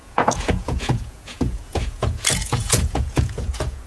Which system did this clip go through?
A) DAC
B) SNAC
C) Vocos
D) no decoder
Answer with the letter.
C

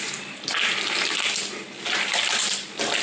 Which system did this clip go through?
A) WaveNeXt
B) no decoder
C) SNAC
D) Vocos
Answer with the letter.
B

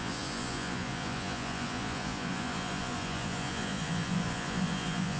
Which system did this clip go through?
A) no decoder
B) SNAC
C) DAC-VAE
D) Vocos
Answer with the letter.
D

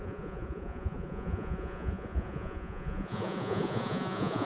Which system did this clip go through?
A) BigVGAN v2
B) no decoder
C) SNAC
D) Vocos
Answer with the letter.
D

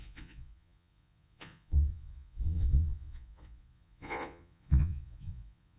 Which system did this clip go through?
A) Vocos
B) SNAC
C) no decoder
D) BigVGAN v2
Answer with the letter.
A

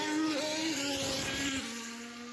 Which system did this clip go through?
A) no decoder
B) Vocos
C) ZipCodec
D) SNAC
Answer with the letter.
A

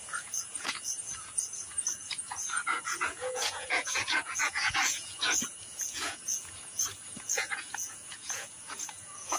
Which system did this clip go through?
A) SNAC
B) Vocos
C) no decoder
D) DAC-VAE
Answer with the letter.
B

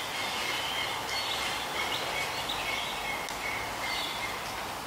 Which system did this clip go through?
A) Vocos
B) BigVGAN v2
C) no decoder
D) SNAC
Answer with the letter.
C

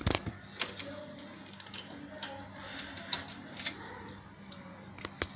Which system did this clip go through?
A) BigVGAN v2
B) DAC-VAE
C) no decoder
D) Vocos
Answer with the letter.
C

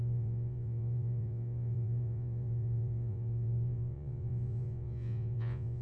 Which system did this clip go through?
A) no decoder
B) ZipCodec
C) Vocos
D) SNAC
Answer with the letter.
C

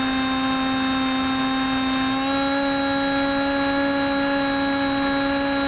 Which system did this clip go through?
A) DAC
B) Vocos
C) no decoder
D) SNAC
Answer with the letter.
C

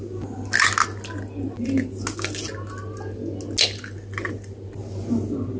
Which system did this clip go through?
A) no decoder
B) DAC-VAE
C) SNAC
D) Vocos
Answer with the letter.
A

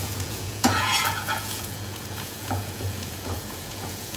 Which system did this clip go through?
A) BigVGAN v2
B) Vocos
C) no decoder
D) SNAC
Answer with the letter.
B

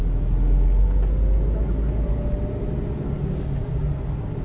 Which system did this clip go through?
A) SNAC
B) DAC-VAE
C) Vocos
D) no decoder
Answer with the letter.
D